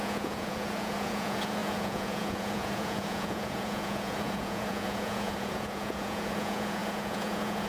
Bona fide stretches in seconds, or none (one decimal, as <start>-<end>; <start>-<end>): none